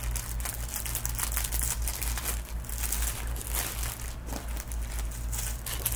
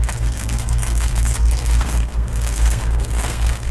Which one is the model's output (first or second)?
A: second